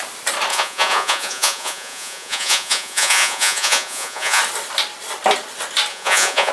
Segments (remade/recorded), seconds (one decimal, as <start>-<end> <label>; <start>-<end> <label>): 0.0-0.5 recorded; 0.5-4.4 remade; 4.4-5.9 recorded; 5.9-6.5 remade